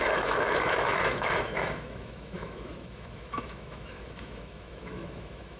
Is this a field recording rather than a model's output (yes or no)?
no